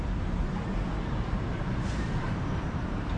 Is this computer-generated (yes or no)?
yes